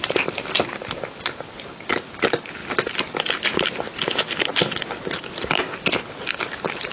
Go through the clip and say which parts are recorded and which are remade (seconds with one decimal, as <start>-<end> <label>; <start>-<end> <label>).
0.0-6.9 recorded